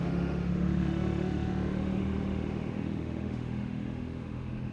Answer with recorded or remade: remade